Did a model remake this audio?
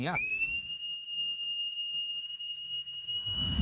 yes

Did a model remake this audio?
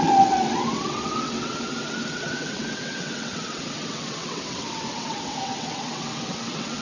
yes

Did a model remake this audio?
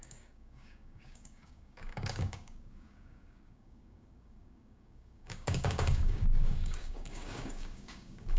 yes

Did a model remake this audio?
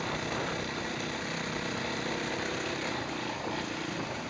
yes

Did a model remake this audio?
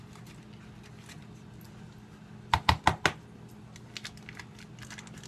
no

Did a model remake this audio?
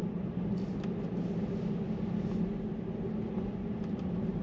no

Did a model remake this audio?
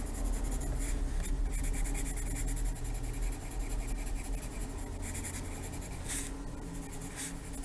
no